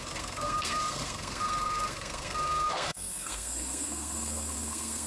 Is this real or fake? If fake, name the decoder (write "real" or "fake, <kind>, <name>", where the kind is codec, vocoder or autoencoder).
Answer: fake, codec, SNAC